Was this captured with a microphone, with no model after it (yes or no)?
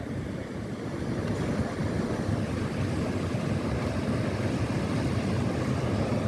yes